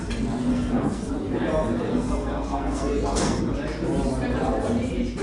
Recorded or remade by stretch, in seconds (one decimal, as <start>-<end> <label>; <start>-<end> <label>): 0.0-0.5 recorded; 0.5-1.1 remade; 1.1-1.9 recorded; 1.9-3.4 remade; 3.4-5.2 recorded

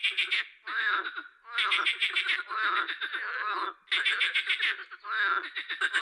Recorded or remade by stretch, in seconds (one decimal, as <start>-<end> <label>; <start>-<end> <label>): 0.0-6.0 recorded

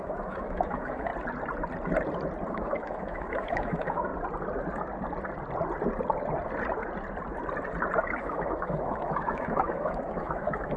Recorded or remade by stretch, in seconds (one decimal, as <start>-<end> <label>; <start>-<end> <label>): 0.0-1.1 remade; 1.1-2.5 recorded; 2.5-4.1 remade; 4.1-8.2 recorded; 8.2-10.8 remade